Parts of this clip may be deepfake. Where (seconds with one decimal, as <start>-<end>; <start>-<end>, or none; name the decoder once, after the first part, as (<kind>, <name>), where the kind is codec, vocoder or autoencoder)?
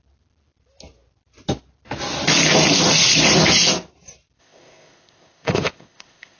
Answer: 4.4-6.4 (codec, ZipCodec)